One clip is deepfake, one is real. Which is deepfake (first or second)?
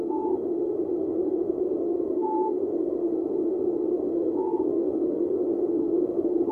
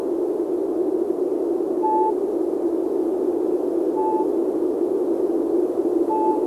first